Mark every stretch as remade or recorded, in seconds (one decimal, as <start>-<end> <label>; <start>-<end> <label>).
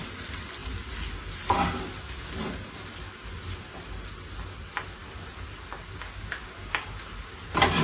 0.0-7.8 recorded